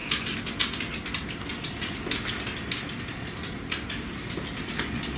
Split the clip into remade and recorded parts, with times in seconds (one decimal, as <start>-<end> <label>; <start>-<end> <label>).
0.0-5.2 recorded